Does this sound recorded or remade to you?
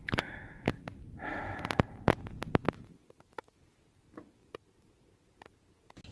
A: recorded